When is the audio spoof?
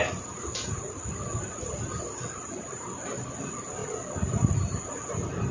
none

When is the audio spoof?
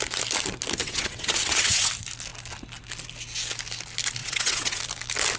0.8-1.9 (vocoder, WaveNeXt); 4.2-4.8